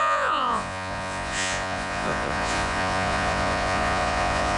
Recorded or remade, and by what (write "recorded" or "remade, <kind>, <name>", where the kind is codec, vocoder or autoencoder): remade, vocoder, Vocos